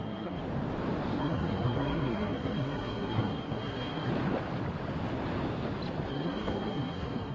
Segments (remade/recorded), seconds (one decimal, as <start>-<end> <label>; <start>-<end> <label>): 0.0-0.4 remade; 0.4-1.2 recorded; 1.2-4.1 remade; 4.1-6.1 recorded; 6.1-7.3 remade